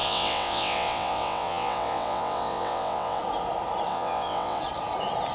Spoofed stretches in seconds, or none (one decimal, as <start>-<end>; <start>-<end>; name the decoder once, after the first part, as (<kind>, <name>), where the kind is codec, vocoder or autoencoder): 0.0-3.2 (vocoder, WaveNeXt); 3.9-4.6